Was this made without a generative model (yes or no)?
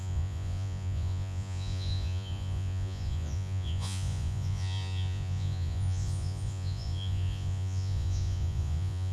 no